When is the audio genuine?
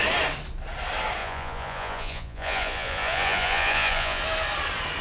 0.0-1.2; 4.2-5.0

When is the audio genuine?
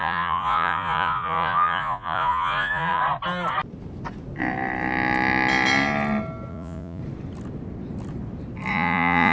3.0-6.5; 7.0-8.7